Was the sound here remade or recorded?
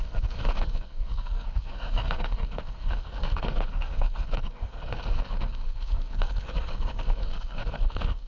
remade